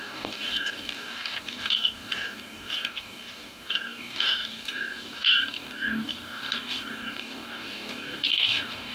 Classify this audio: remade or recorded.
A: remade